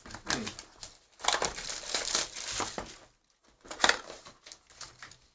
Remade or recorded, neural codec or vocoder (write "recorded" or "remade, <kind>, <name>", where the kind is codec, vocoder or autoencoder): recorded